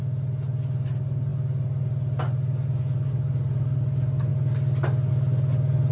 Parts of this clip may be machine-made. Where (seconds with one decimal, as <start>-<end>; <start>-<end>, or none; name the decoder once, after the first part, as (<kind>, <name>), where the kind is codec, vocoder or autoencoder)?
none